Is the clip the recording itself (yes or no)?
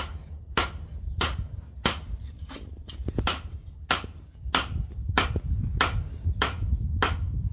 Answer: yes